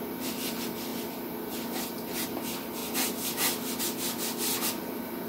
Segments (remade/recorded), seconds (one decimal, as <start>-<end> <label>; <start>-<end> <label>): 0.0-5.3 recorded